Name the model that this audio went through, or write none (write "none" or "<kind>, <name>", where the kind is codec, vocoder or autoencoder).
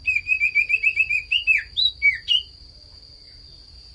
none